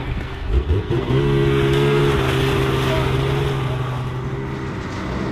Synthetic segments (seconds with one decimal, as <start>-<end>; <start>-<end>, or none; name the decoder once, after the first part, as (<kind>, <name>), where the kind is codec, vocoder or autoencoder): 0.0-2.0 (codec, SNAC)